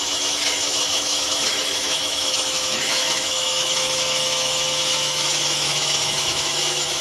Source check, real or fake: fake